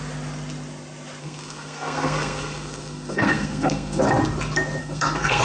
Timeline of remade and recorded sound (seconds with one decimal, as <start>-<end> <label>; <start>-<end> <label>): 0.0-1.2 recorded; 1.2-4.0 remade; 4.0-4.8 recorded; 4.8-5.4 remade